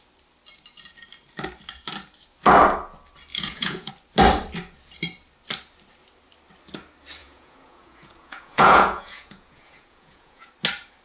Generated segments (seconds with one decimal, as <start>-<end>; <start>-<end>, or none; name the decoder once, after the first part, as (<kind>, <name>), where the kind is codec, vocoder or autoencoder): 3.3-3.9 (vocoder, Vocos); 7.2-10.5